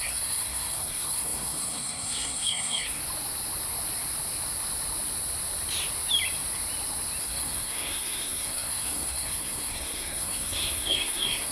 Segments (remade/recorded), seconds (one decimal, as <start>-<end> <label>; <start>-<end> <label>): 0.0-3.0 remade; 3.0-7.2 recorded; 7.2-11.5 remade